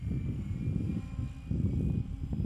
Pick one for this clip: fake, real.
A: real